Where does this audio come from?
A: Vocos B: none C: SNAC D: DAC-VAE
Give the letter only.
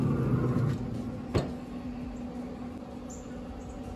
B